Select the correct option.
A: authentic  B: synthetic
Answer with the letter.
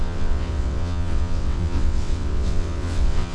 B